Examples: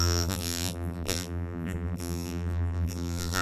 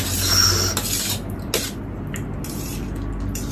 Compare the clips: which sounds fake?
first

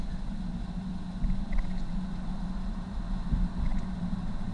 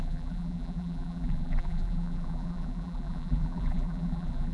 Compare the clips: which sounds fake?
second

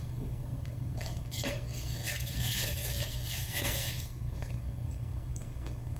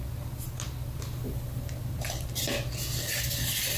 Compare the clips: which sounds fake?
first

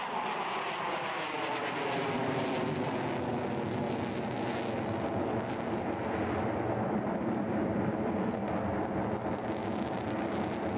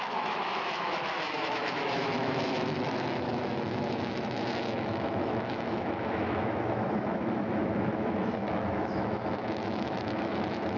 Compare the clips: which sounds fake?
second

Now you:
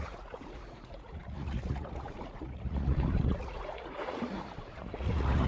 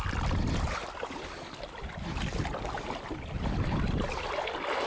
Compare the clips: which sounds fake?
first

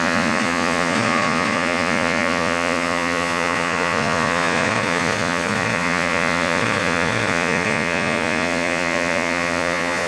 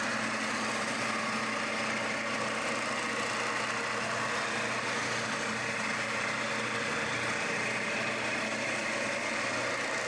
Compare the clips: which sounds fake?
first